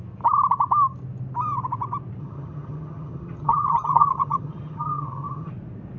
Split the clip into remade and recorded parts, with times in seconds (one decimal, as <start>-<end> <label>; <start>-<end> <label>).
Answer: 0.0-2.2 recorded; 2.2-5.5 remade; 5.5-6.0 recorded